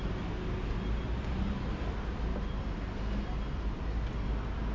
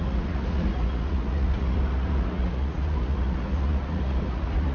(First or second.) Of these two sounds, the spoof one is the second